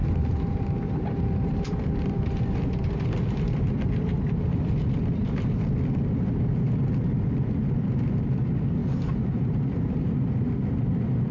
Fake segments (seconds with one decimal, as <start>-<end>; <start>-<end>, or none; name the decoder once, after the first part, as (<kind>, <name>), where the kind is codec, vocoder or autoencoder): 0.0-4.7 (vocoder, BigVGAN v2); 8.8-10.1